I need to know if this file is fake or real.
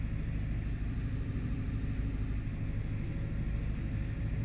real